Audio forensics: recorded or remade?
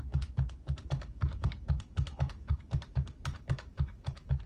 remade